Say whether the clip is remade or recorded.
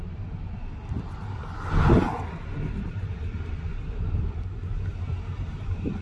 recorded